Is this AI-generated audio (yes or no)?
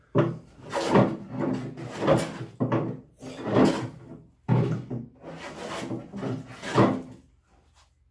no